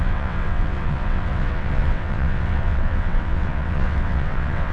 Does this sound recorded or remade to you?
remade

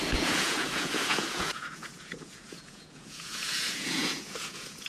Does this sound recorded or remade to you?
remade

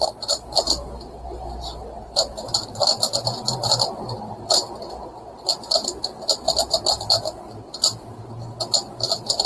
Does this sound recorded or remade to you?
recorded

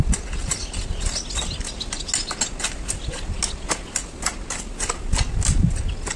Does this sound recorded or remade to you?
recorded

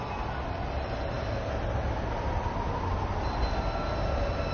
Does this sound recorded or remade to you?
recorded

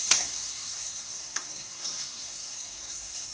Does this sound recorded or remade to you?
remade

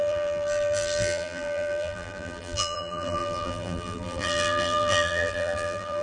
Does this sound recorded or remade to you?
remade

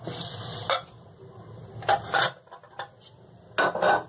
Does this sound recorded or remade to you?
recorded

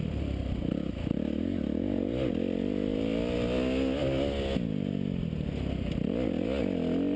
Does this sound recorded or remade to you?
recorded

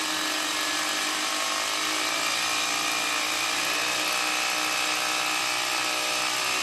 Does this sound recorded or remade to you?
recorded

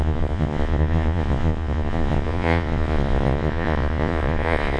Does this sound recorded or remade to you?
remade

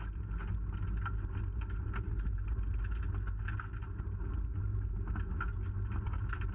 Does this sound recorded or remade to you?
recorded